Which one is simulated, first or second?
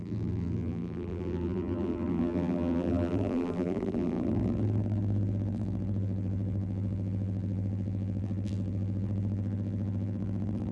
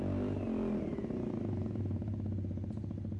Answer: first